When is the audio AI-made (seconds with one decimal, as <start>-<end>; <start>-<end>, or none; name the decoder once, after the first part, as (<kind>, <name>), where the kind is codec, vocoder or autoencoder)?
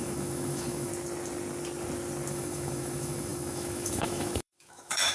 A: 0.0-0.9 (autoencoder, DAC-VAE); 2.3-5.1